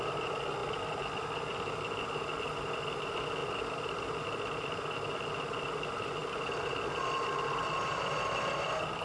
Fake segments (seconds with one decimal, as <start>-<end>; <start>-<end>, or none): none